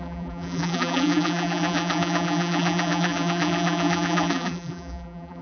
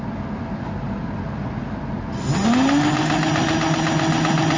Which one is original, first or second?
second